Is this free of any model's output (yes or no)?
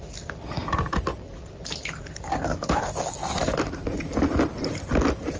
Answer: yes